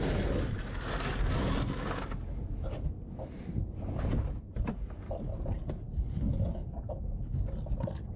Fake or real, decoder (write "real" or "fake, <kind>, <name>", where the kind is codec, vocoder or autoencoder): real